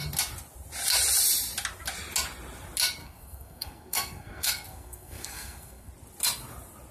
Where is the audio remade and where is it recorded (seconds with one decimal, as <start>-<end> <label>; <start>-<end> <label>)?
0.0-3.0 recorded; 3.0-5.9 remade; 5.9-6.9 recorded